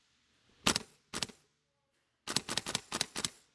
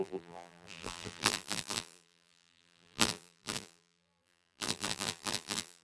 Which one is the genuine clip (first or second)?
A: first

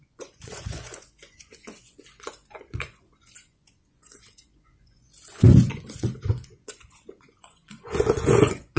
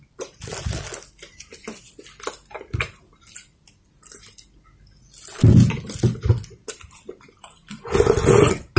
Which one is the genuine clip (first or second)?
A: second